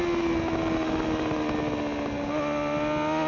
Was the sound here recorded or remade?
recorded